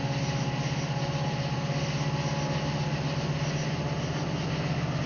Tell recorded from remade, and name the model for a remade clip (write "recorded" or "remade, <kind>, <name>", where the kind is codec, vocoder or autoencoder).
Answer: recorded